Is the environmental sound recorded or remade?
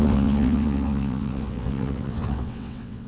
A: remade